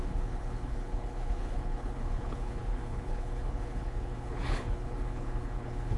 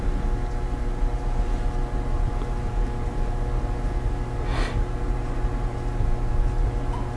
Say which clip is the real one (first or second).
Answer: second